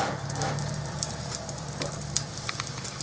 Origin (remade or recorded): remade